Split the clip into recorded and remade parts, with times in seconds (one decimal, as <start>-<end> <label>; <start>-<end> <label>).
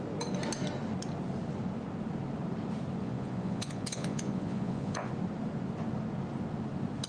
0.0-3.0 recorded; 3.0-5.1 remade; 5.1-7.1 recorded